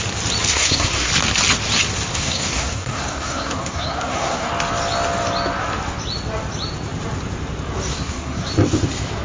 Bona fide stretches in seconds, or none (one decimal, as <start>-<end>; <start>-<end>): 0.0-0.5; 1.1-2.1; 4.5-7.9; 8.5-9.2